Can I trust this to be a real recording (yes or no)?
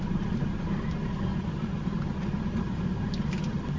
yes